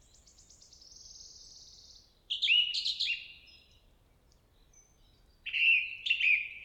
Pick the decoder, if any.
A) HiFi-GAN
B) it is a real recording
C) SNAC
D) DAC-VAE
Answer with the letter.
B